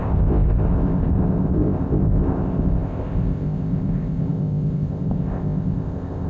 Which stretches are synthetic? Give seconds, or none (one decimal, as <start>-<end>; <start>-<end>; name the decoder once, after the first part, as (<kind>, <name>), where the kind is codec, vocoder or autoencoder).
0.0-6.3 (codec, ZipCodec)